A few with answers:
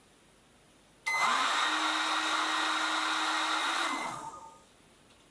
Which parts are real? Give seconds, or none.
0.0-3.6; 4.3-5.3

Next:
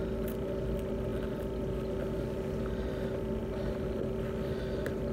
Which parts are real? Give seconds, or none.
0.0-5.1

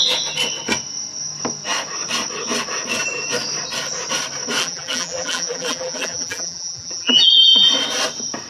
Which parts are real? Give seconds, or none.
0.0-4.6; 7.7-8.5

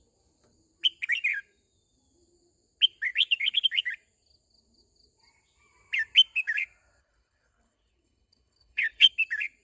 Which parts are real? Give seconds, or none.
0.0-7.0; 9.1-9.6

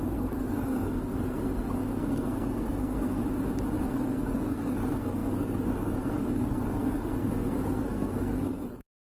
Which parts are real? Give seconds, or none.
3.2-3.8

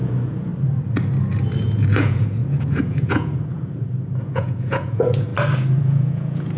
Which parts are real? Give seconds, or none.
0.5-1.6; 5.3-5.8

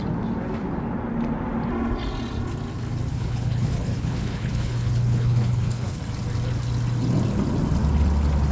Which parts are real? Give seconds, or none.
0.0-3.1; 6.0-8.5

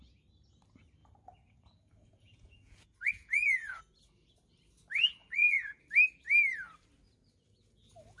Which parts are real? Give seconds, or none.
0.0-1.0; 3.8-5.2; 5.8-8.2